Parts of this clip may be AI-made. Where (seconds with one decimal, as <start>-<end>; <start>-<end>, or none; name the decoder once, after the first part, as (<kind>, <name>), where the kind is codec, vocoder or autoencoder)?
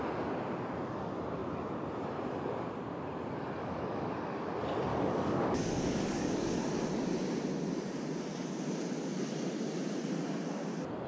3.6-4.1 (codec, DAC); 4.9-6.8